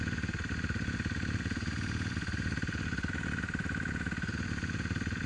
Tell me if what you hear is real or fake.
real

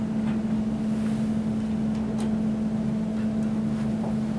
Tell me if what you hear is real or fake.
real